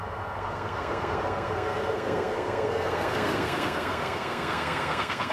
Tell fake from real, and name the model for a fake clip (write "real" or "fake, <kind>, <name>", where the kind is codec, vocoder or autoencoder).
fake, codec, SNAC